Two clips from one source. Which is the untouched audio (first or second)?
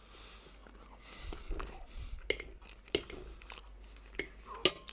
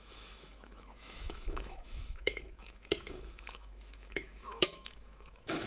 first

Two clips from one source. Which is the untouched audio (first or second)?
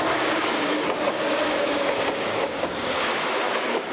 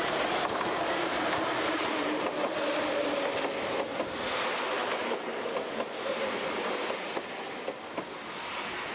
second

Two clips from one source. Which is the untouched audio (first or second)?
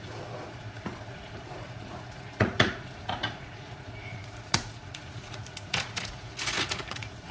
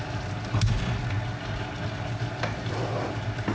second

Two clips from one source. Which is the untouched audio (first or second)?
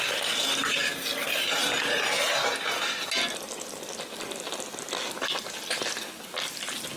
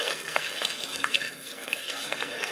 first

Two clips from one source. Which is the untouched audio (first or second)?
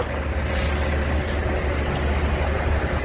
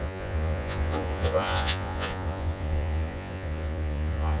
first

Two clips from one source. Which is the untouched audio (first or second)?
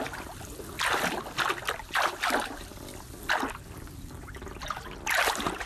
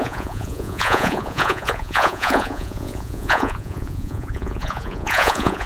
first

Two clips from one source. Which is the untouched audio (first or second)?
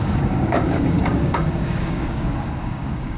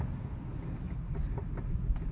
second